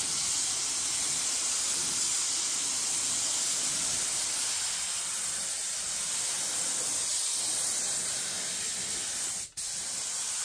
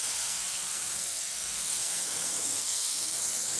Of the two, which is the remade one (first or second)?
second